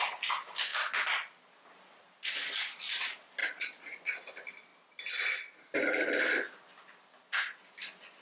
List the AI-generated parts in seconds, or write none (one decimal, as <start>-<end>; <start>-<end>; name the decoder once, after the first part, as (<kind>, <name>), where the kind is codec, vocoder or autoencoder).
3.4-4.2 (vocoder, Vocos)